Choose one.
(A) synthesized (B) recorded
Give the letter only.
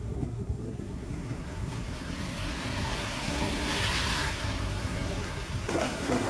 A